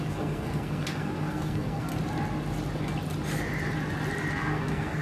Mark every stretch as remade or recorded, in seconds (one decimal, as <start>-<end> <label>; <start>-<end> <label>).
0.0-1.9 remade; 1.9-4.3 recorded; 4.3-5.0 remade